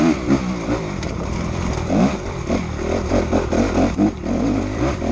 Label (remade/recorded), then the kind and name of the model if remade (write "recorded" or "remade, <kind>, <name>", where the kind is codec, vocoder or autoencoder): recorded